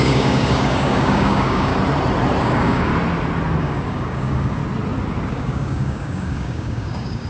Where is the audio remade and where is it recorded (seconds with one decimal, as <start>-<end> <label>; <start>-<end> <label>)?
0.0-1.7 remade; 1.7-2.4 recorded; 2.4-2.9 remade; 2.9-3.6 recorded; 3.6-4.6 remade; 4.6-5.3 recorded; 5.3-7.3 remade